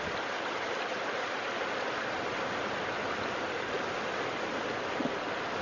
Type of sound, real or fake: real